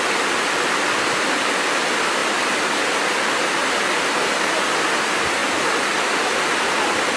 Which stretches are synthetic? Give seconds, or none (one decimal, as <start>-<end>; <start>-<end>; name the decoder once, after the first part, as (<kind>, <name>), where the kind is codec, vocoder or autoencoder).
none